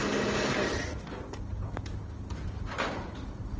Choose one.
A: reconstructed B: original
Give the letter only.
B